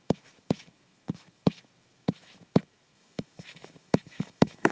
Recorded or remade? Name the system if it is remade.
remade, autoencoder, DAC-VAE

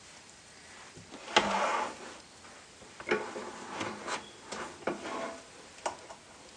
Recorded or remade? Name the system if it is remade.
recorded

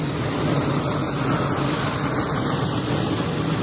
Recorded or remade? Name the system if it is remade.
recorded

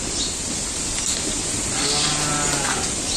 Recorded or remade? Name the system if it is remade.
recorded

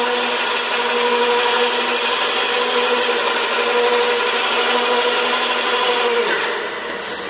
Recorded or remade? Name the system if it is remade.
recorded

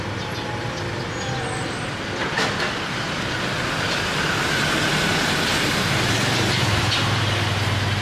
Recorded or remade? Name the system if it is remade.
recorded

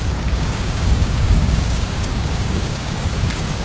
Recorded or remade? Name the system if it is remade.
remade, codec, DAC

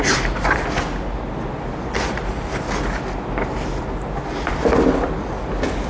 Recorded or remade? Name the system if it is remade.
recorded